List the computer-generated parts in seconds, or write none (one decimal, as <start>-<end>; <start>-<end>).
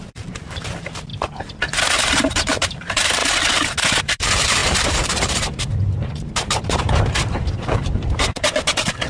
0.0-1.1; 2.1-3.2; 4.0-9.1